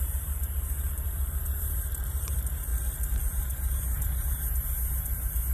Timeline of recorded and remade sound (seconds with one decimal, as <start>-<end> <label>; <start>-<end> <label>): 0.0-2.7 remade; 2.7-3.2 recorded; 3.2-5.5 remade